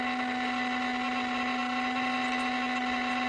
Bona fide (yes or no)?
yes